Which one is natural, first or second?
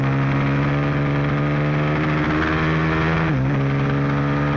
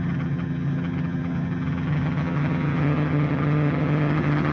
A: first